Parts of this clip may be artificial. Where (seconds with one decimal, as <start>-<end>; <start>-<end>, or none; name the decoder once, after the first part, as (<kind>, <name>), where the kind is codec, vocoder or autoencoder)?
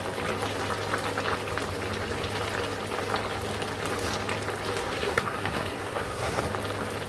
4.8-6.4 (codec, SNAC)